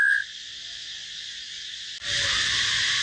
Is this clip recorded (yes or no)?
yes